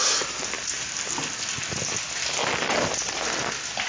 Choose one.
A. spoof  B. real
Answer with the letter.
B